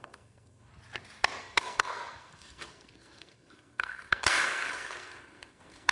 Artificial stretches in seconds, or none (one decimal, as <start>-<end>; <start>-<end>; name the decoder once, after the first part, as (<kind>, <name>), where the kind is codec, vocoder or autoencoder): 0.0-0.7 (codec, SNAC); 1.4-5.9